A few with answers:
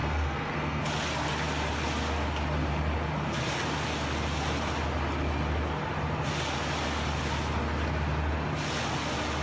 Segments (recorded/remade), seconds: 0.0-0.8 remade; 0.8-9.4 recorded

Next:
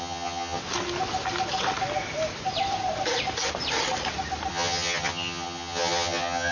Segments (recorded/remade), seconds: 0.0-0.6 remade; 0.6-4.5 recorded; 4.5-6.5 remade

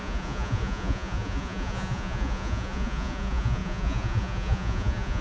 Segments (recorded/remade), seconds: 0.0-5.2 remade